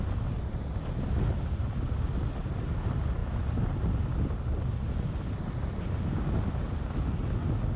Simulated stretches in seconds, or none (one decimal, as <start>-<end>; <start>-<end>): none